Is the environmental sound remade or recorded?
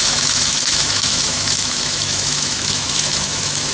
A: remade